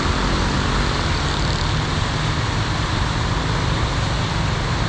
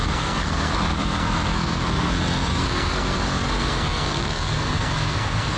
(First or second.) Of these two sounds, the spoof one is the second